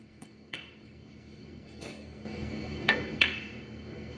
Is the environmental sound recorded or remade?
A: remade